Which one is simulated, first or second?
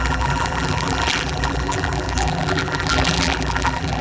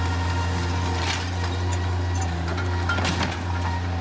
first